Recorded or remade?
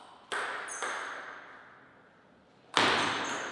recorded